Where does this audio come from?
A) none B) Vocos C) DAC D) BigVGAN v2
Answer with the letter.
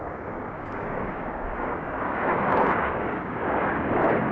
C